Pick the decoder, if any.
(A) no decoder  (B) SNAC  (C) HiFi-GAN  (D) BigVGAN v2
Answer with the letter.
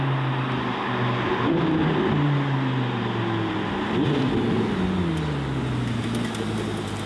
A